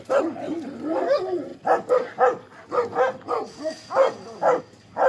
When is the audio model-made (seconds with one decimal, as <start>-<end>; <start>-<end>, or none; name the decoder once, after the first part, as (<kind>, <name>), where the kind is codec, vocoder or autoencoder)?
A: none